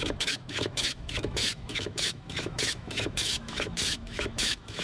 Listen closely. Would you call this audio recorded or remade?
remade